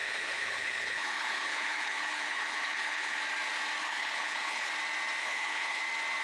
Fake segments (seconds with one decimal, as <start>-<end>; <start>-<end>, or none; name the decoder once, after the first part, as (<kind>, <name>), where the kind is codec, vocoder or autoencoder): 0.0-3.2 (codec, HILCodec); 3.8-4.7; 5.2-5.8